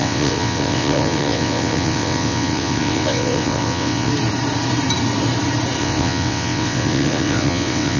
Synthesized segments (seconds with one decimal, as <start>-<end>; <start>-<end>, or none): 0.0-4.1; 5.8-8.0